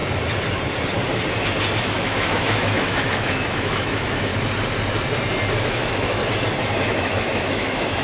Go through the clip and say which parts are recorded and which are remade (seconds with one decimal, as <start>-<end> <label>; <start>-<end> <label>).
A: 0.0-1.8 recorded; 1.8-4.3 remade; 4.3-5.6 recorded; 5.6-6.2 remade; 6.2-6.8 recorded; 6.8-8.0 remade